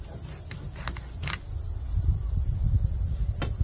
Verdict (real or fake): real